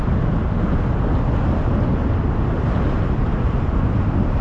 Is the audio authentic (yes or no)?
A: yes